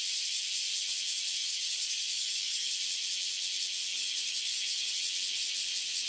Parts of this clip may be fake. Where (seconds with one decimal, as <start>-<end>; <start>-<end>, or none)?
1.4-2.7; 3.9-4.9